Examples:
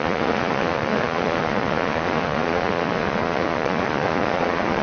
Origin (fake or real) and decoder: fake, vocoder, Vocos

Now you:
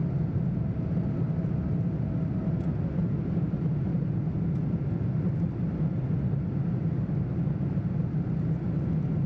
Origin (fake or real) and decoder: real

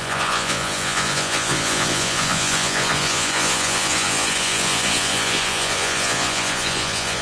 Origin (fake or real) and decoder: fake, vocoder, Vocos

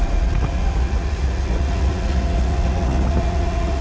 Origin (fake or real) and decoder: fake, vocoder, Vocos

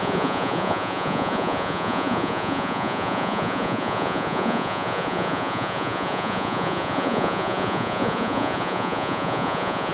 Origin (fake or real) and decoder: fake, vocoder, Vocos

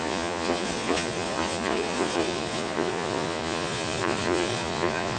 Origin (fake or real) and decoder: fake, vocoder, Vocos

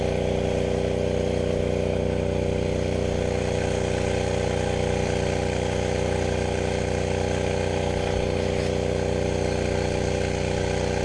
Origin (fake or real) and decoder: real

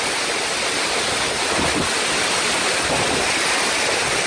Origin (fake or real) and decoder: real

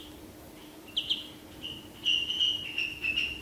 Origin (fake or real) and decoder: real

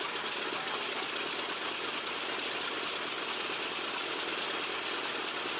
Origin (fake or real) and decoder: real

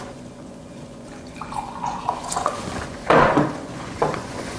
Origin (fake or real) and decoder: fake, vocoder, Vocos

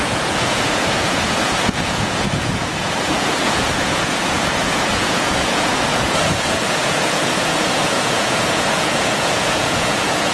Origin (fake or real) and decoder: fake, vocoder, Vocos